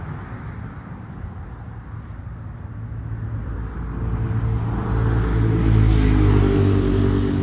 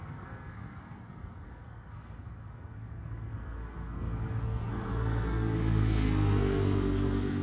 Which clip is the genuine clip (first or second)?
first